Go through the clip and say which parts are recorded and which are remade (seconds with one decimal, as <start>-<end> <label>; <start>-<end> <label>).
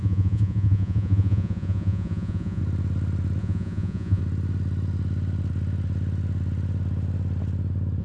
0.0-2.6 remade; 2.6-3.4 recorded; 3.4-4.2 remade; 4.2-8.0 recorded